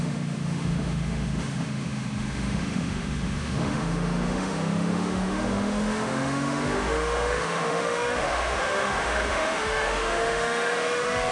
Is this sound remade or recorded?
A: remade